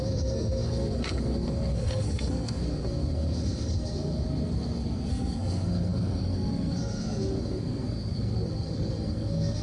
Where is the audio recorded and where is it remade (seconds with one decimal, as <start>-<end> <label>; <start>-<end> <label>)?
0.0-9.6 remade